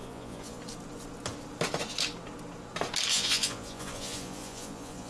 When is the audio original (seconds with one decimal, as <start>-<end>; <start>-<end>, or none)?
0.6-3.1